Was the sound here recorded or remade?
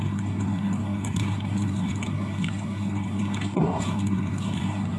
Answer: remade